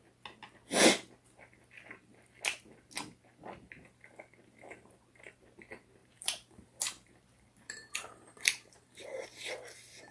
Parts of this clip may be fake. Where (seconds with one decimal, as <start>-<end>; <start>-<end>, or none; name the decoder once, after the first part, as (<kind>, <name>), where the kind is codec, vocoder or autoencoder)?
6.0-9.6 (vocoder, BigVGAN v2)